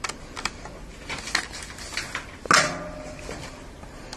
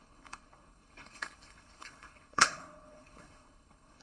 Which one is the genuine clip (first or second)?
first